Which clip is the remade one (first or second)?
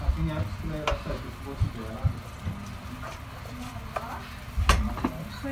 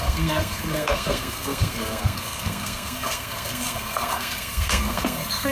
second